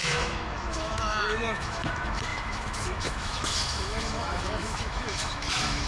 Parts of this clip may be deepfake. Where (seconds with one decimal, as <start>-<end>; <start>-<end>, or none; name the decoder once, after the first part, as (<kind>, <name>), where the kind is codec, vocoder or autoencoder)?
0.0-5.9 (autoencoder, DAC-VAE)